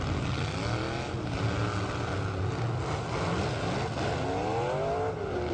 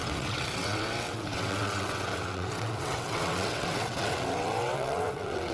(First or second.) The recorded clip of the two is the first